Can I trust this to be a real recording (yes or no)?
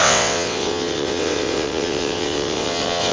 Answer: no